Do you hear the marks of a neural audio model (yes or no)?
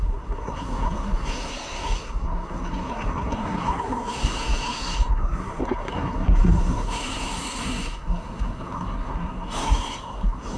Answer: yes